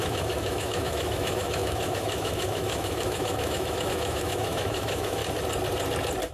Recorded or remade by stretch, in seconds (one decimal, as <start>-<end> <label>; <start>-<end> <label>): 0.0-5.2 remade; 5.2-6.3 recorded